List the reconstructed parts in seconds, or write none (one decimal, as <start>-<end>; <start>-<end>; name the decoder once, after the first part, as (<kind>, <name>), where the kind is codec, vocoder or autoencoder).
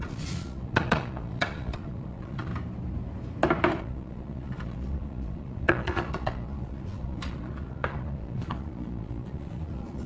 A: 0.0-2.5 (vocoder, Vocos); 3.8-10.1